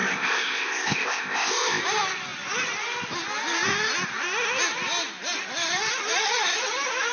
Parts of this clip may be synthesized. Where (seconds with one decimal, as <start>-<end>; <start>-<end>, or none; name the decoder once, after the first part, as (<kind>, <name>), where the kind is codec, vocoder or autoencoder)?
0.0-1.8 (codec, ZipCodec)